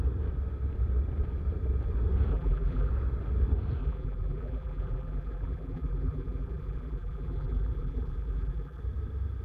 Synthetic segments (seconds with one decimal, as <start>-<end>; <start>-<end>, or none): 2.3-2.9; 3.8-8.8